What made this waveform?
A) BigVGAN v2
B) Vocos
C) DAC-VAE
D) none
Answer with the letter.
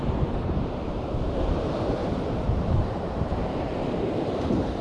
A